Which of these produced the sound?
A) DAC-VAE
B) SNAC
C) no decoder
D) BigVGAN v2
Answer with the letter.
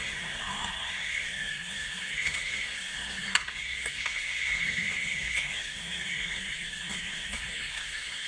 B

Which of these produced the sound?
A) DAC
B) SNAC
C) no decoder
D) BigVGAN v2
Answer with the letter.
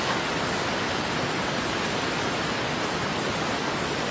C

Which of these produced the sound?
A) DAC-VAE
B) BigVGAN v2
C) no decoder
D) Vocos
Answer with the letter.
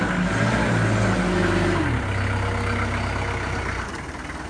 C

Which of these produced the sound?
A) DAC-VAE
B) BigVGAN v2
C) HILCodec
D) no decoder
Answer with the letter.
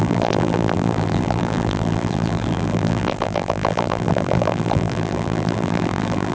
B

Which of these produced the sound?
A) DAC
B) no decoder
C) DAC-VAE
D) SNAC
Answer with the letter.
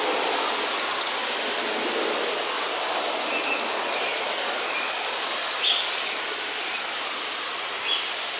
B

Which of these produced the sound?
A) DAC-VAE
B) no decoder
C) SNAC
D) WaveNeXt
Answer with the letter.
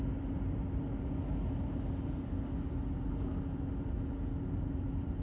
B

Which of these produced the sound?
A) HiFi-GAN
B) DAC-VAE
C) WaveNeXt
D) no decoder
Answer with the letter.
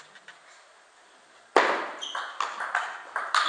D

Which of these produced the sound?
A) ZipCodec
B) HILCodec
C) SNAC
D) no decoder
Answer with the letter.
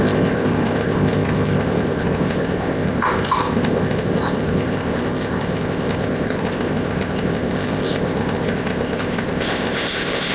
A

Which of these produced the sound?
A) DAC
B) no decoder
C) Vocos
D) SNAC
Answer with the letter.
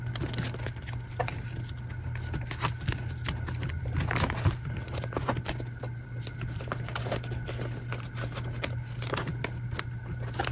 B